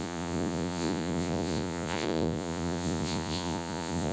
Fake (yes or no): yes